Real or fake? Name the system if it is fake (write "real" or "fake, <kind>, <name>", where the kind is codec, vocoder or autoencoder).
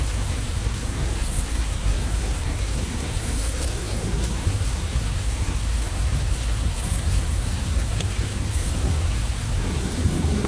fake, codec, SNAC